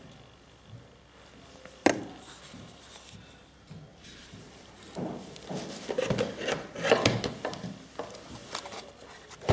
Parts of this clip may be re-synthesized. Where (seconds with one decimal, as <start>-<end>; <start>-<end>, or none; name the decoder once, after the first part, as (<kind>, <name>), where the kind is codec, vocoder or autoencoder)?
3.9-5.5 (vocoder, BigVGAN v2)